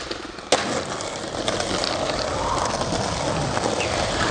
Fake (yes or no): no